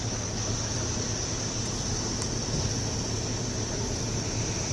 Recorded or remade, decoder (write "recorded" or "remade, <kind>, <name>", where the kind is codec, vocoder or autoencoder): recorded